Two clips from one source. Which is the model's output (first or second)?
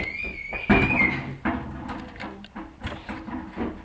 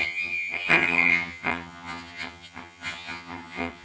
second